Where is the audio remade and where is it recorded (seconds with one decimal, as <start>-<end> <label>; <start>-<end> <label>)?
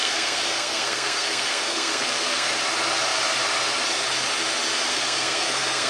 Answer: 0.0-2.5 remade; 2.5-4.9 recorded; 4.9-5.9 remade